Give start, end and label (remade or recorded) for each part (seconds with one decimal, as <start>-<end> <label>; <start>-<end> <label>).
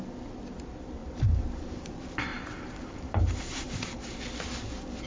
0.0-1.0 recorded; 1.0-1.9 remade; 1.9-2.3 recorded; 2.3-4.2 remade; 4.2-5.1 recorded